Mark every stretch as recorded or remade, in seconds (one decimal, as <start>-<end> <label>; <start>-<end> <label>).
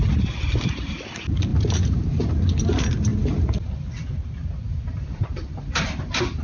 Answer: 0.0-1.5 recorded; 1.5-2.3 remade; 2.3-4.4 recorded; 4.4-6.4 remade